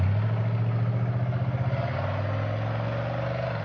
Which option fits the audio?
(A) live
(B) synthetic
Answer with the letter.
A